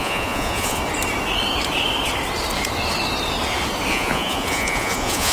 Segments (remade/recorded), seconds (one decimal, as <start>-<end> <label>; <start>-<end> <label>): 0.0-0.8 remade; 0.8-3.9 recorded; 3.9-5.3 remade